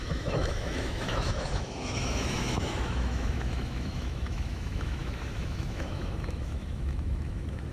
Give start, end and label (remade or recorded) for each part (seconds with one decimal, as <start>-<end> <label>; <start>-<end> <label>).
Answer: 0.0-7.7 remade